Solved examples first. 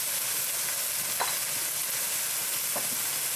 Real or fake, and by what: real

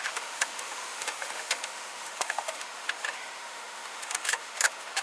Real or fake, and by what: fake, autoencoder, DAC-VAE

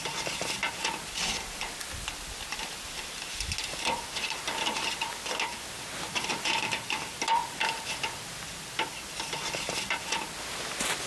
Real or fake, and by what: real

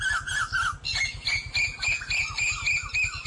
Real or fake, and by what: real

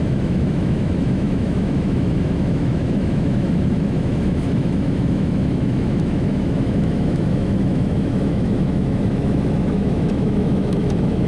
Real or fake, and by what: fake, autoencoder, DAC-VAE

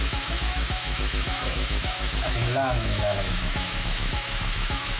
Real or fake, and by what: fake, autoencoder, DAC-VAE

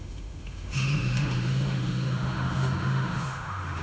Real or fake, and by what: fake, autoencoder, DAC-VAE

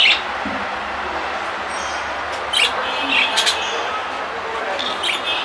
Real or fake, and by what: real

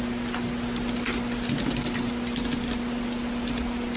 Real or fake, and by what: real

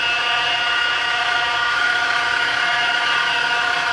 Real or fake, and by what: fake, autoencoder, DAC-VAE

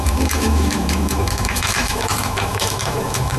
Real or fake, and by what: fake, autoencoder, DAC-VAE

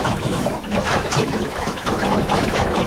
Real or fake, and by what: fake, autoencoder, DAC-VAE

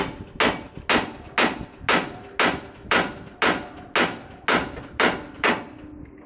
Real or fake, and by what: real